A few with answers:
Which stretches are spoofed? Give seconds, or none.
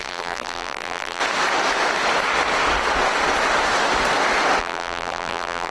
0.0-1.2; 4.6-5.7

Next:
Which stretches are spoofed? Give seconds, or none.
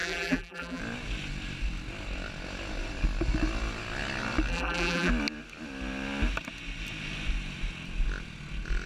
0.0-0.8; 4.5-5.1